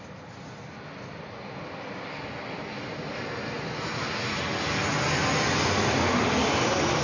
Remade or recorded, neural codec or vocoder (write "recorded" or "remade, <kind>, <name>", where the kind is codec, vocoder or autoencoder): recorded